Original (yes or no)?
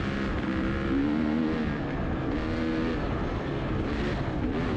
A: yes